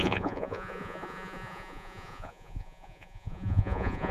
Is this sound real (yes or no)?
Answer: no